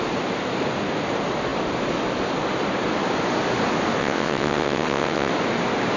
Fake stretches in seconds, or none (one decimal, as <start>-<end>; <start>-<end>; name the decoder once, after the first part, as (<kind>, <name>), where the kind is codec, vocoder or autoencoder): 4.0-5.3 (vocoder, WaveNeXt)